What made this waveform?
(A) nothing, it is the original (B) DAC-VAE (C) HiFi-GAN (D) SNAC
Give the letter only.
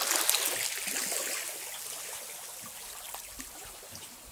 A